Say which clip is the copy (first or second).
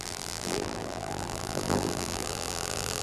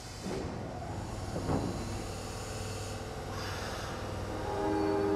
first